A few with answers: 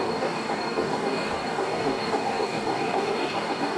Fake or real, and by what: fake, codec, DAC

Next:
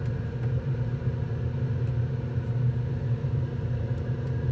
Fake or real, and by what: real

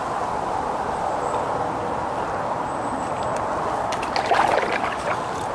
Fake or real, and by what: real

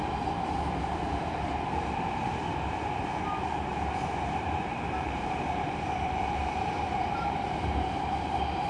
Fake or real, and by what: fake, vocoder, BigVGAN v2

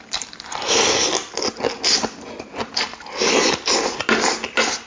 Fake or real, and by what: real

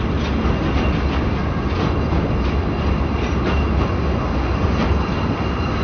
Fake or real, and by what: real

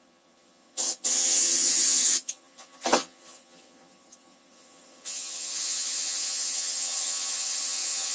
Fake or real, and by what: fake, vocoder, HiFi-GAN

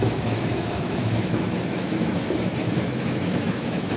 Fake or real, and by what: fake, autoencoder, DAC-VAE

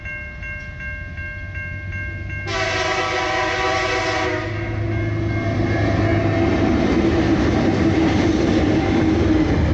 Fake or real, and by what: real